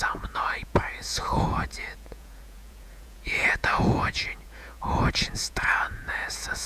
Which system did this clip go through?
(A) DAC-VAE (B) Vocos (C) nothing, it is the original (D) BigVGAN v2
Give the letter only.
B